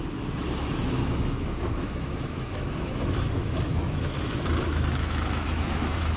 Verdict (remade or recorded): remade